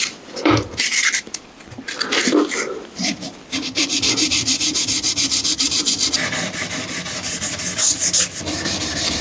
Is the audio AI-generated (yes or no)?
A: yes